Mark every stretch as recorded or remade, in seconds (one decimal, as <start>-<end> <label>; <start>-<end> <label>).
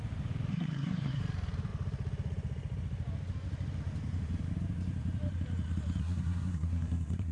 0.0-0.5 recorded; 0.5-1.2 remade; 1.2-6.0 recorded; 6.0-7.3 remade